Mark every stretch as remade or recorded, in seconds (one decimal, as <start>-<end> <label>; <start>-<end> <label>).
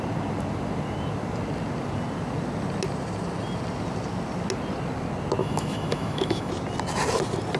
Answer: 0.0-5.4 recorded; 5.4-6.5 remade; 6.5-7.6 recorded